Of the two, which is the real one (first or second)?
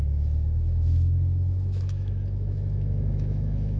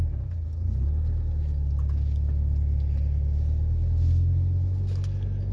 second